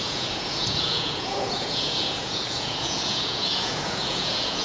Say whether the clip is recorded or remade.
remade